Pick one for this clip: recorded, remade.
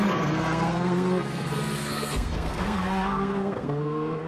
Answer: remade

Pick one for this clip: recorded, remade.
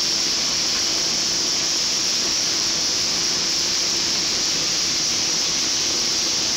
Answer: remade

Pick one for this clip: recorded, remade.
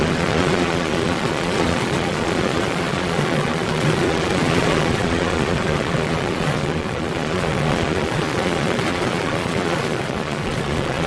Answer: remade